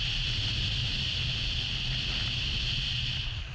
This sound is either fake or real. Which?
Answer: real